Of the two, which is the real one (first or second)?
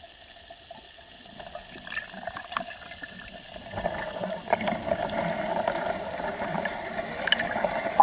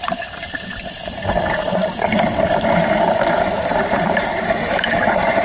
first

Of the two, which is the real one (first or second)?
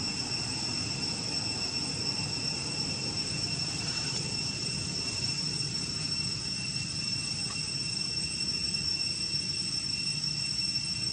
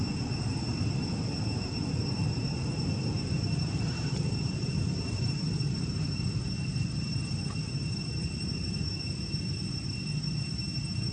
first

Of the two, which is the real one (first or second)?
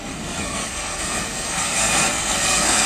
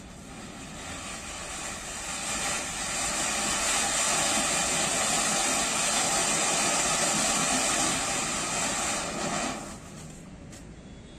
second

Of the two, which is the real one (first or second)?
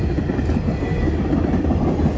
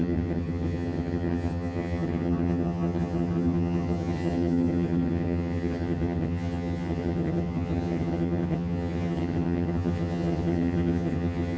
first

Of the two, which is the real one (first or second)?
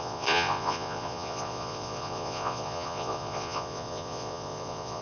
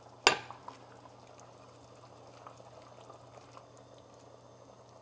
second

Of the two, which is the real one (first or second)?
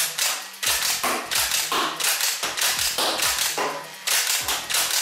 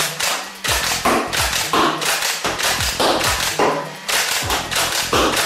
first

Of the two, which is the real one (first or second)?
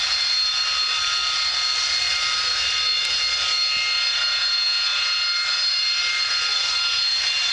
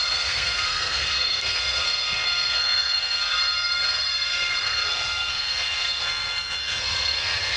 first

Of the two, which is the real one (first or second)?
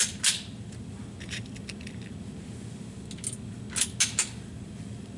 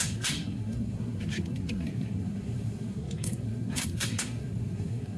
first